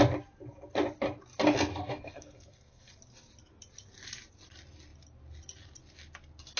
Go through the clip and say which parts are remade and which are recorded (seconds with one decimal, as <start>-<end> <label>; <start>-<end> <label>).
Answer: 0.0-1.7 recorded; 1.7-2.9 remade; 2.9-6.6 recorded